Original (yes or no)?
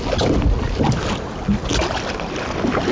yes